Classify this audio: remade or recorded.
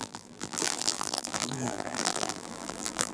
remade